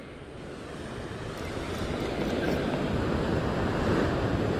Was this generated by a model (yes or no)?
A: no